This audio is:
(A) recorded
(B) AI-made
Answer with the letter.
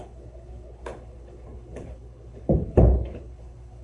B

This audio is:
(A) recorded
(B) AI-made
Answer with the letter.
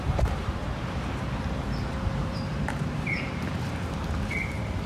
B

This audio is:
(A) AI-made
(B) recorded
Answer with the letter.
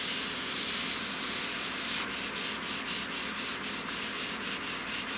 B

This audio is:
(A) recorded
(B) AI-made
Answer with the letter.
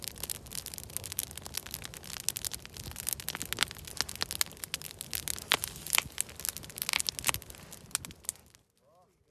A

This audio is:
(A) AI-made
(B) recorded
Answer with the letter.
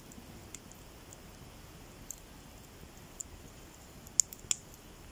B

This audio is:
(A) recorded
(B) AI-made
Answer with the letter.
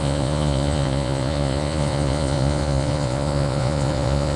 B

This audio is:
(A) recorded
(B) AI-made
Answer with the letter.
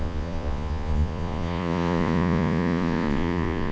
B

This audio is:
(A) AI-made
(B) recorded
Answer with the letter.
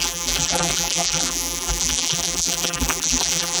A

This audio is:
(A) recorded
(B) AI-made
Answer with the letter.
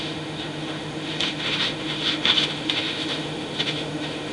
B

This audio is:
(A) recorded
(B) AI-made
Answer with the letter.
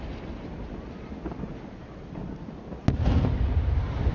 A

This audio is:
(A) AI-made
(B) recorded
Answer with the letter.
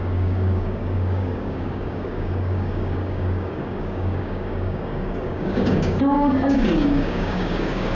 A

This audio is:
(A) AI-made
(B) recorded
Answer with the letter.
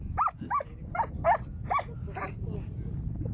B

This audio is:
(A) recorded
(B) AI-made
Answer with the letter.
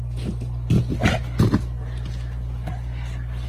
A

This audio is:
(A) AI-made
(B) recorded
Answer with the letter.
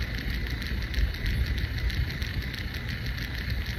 B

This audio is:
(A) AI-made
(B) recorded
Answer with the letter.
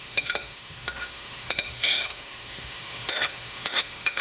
A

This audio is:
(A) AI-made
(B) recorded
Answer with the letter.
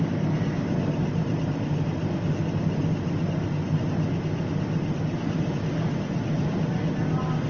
B